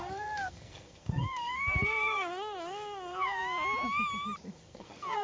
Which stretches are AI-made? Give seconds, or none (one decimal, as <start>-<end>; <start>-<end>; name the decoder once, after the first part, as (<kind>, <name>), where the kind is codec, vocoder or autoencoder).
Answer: 0.0-3.4 (codec, SNAC); 4.5-5.2